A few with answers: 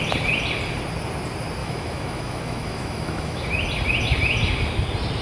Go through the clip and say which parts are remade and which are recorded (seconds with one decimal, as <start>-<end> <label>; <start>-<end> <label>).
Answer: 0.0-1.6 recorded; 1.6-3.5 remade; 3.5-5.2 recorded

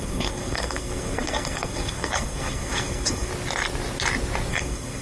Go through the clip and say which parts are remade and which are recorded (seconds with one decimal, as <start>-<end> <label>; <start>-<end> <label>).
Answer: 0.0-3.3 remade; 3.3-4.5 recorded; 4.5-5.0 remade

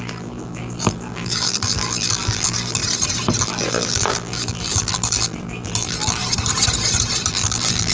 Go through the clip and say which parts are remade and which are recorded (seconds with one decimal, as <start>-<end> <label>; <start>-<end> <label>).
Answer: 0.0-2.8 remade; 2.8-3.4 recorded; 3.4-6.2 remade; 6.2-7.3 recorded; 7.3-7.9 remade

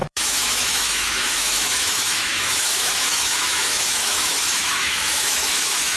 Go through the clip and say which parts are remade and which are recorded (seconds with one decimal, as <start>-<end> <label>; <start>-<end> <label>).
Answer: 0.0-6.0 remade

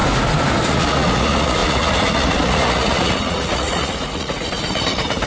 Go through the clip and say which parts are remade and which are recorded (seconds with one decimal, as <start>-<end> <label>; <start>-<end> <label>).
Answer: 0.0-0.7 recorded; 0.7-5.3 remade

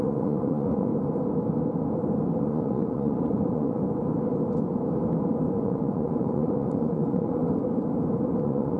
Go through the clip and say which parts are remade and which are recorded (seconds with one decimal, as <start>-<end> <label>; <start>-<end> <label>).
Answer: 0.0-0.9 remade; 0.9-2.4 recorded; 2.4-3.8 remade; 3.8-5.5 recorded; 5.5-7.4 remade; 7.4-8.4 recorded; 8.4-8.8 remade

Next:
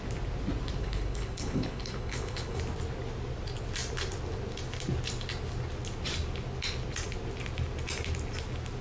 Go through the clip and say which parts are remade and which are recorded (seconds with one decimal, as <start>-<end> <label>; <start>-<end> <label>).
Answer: 0.0-0.8 recorded; 0.8-2.6 remade; 2.6-8.8 recorded